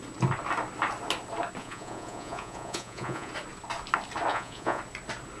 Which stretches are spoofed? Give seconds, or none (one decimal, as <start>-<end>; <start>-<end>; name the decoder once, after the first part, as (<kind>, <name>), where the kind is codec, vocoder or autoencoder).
1.6-3.3 (vocoder, Vocos); 4.3-4.8

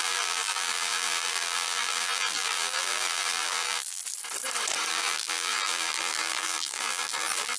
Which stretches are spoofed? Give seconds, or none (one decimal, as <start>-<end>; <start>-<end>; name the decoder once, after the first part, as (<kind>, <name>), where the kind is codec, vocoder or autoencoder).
0.0-4.0 (vocoder, BigVGAN v2); 4.9-7.6